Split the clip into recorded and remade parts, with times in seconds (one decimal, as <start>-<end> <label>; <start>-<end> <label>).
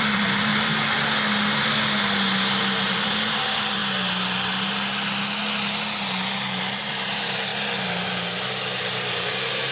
0.0-0.5 remade; 0.5-2.6 recorded; 2.6-3.8 remade; 3.8-6.9 recorded; 6.9-7.5 remade; 7.5-9.7 recorded